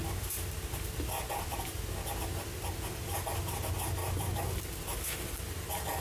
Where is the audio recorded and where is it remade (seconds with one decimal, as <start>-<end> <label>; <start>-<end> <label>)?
0.0-4.0 recorded; 4.0-4.5 remade; 4.5-6.0 recorded